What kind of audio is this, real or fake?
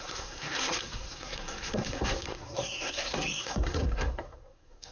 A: fake